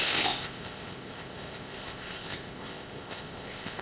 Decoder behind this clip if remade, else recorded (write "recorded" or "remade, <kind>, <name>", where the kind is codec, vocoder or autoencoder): remade, codec, ZipCodec